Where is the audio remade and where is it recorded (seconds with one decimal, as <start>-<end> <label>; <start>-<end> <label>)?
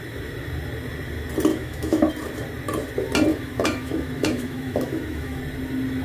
0.0-1.5 recorded; 1.5-2.1 remade; 2.1-3.3 recorded; 3.3-5.4 remade; 5.4-6.0 recorded